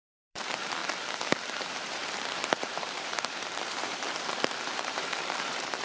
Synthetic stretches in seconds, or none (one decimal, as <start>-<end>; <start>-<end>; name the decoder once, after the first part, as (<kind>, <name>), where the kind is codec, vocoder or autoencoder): 0.0-0.8 (vocoder, BigVGAN v2); 1.6-5.8